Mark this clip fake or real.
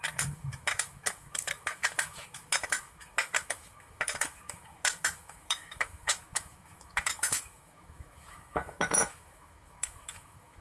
fake